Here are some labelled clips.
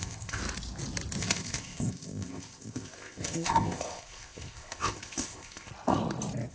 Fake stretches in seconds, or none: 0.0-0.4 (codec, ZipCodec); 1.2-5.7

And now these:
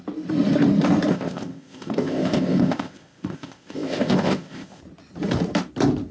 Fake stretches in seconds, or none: 1.1-4.8 (codec, ZipCodec)

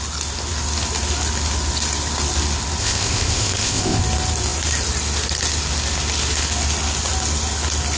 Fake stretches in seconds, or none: 2.8-4.0 (codec, ZipCodec)

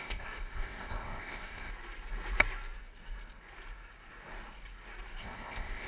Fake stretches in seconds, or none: 0.0-1.7 (codec, ZipCodec); 5.2-5.9

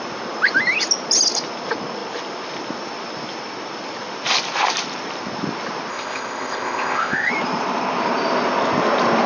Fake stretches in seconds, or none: 5.9-7.3 (codec, ZipCodec)

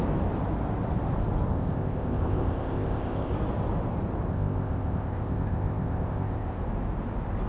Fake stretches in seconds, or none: 1.5-3.3 (codec, ZipCodec); 4.3-6.6

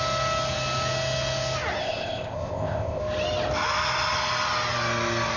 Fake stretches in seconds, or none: 1.8-3.0 (codec, ZipCodec)